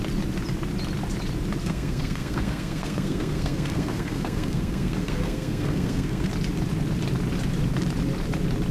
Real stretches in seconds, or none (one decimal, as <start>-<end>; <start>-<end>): 0.0-1.6; 6.3-8.7